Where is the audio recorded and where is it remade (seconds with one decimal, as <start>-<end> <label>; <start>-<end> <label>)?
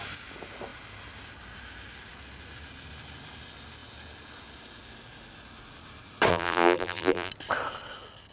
0.0-6.3 recorded; 6.3-7.3 remade; 7.3-8.3 recorded